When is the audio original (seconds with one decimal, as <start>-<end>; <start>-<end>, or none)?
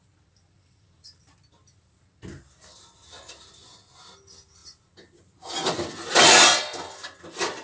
0.0-7.6